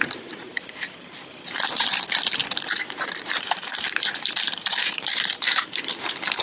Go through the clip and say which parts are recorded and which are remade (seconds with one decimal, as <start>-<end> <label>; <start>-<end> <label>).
0.0-6.4 remade